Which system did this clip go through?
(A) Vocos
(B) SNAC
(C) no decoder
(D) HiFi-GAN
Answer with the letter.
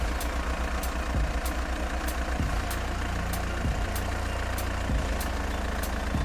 C